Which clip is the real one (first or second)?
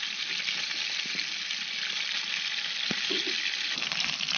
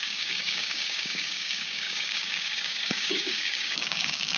first